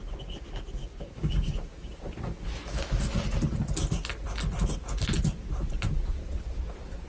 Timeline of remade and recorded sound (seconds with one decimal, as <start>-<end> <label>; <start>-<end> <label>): 0.0-0.8 recorded; 0.8-1.9 remade; 1.9-7.1 recorded